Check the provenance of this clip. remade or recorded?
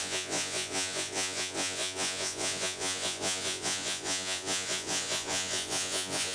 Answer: remade